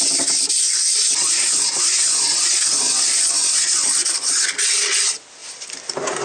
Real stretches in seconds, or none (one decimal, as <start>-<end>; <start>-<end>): 0.0-3.4; 4.3-6.2